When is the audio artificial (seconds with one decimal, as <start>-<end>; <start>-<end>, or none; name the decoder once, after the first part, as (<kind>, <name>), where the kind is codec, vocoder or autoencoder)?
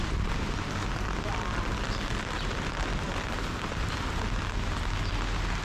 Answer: none